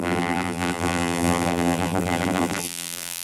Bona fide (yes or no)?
no